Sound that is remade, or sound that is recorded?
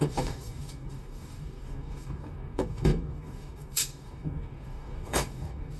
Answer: remade